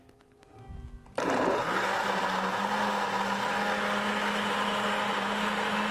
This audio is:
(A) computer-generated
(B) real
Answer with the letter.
B